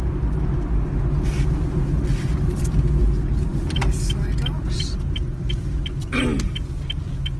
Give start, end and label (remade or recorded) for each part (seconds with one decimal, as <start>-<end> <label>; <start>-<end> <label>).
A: 0.0-1.8 recorded; 1.8-3.0 remade; 3.0-7.4 recorded